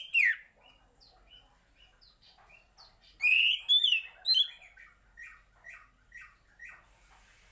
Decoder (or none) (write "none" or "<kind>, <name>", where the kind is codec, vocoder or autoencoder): none